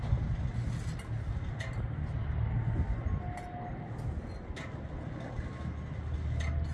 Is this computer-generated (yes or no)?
no